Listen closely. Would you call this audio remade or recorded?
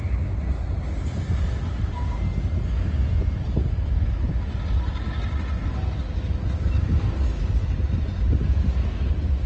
recorded